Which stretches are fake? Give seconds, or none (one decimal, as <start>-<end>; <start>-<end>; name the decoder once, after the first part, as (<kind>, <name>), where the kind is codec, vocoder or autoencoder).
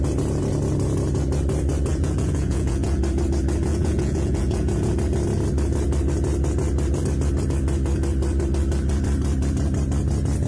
1.9-3.0 (vocoder, Vocos); 3.7-4.9